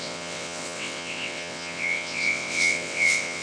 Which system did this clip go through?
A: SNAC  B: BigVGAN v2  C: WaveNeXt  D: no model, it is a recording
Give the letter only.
C